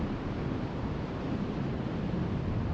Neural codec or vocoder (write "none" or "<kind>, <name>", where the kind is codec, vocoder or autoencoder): none